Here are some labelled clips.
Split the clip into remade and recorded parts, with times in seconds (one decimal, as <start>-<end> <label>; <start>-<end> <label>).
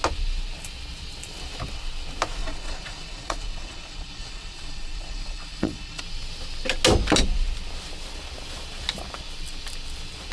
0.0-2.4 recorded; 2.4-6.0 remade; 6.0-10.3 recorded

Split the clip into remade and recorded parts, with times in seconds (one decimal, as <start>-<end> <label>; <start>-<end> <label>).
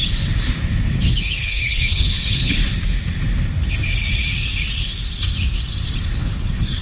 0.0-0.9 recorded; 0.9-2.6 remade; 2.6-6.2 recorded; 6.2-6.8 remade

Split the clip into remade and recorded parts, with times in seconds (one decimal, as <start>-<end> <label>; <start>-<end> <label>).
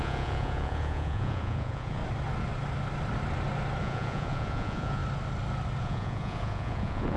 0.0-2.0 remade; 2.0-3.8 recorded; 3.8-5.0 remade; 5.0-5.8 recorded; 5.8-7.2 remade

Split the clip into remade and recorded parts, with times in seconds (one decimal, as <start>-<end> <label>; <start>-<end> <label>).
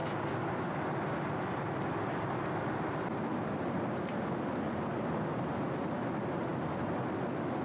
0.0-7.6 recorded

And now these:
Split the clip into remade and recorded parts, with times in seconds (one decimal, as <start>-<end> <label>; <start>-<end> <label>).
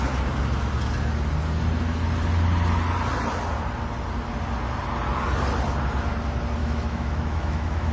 0.0-6.6 recorded; 6.6-7.9 remade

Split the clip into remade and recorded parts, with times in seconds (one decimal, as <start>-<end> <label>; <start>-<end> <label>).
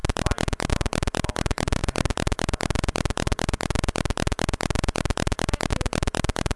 0.0-6.6 remade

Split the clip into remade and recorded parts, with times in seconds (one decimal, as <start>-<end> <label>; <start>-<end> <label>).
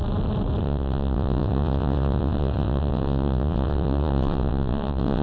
0.0-0.6 recorded; 0.6-5.2 remade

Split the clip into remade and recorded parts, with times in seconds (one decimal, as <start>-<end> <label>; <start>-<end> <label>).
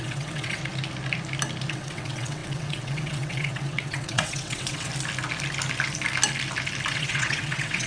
0.0-0.6 remade; 0.6-1.7 recorded; 1.7-4.9 remade; 4.9-6.9 recorded; 6.9-7.9 remade